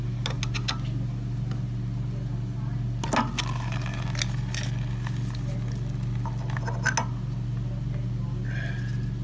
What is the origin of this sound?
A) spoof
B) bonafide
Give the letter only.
B